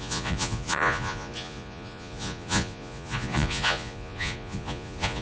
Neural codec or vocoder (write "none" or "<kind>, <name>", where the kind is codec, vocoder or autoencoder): vocoder, Vocos